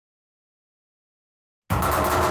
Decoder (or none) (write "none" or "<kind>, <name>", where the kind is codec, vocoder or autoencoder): none